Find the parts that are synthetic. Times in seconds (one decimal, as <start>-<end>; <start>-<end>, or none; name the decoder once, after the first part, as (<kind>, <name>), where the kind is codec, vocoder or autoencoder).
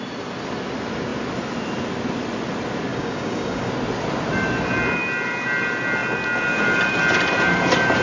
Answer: 2.9-3.7 (codec, DAC)